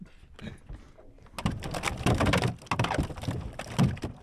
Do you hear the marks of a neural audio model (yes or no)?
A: no